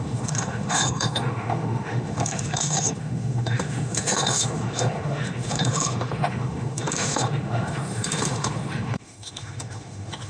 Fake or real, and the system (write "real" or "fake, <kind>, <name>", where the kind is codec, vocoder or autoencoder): fake, autoencoder, DAC-VAE